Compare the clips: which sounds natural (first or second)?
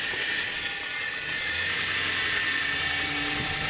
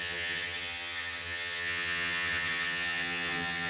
first